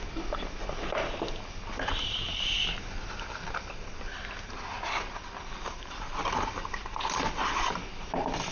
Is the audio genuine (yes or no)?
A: yes